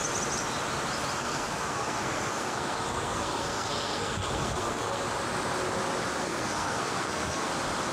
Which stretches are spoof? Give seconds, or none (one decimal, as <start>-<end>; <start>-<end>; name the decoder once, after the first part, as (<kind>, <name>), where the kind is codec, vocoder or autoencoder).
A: 1.2-5.0 (codec, SNAC); 6.2-7.5